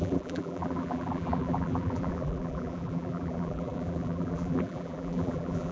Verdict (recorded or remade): remade